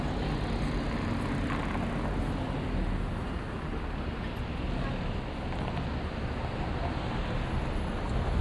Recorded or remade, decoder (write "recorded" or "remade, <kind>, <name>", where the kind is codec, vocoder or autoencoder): recorded